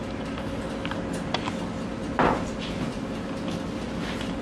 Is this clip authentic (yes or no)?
yes